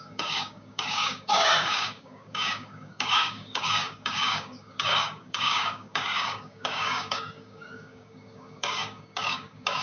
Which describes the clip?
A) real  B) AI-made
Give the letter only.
B